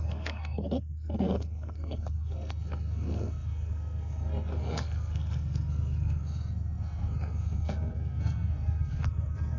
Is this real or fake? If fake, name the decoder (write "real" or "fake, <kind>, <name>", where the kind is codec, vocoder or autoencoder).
fake, codec, SNAC